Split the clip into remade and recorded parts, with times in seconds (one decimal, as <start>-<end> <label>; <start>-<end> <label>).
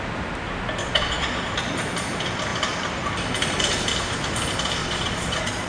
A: 0.0-0.8 recorded; 0.8-1.5 remade; 1.5-4.8 recorded; 4.8-5.7 remade